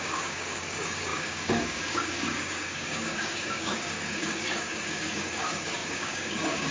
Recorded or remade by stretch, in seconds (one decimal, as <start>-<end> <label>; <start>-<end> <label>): 0.0-6.7 remade